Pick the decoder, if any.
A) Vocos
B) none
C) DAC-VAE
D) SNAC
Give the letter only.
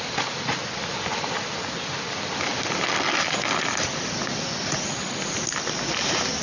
B